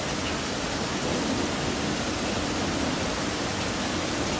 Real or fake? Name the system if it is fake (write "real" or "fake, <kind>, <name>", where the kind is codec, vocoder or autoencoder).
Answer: real